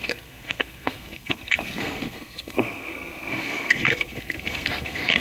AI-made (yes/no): yes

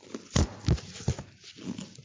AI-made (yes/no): no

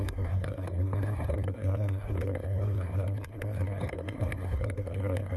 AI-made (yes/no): yes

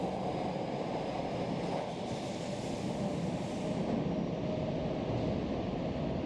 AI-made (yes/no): no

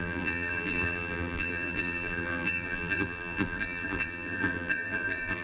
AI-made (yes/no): yes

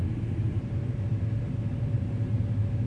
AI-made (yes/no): no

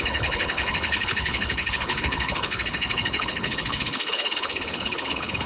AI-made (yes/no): yes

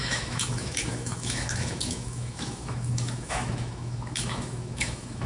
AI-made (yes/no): yes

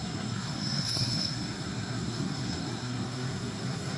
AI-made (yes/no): yes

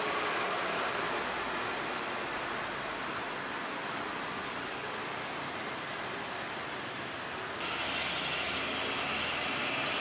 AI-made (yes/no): no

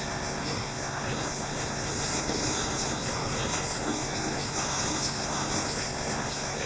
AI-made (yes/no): yes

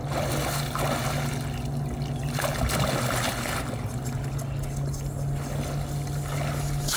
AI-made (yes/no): no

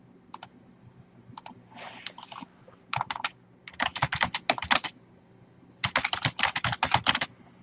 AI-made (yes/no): no